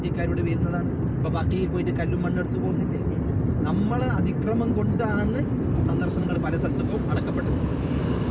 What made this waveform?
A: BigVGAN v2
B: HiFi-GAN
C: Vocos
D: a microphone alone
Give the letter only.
D